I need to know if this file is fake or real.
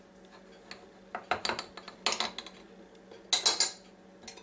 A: real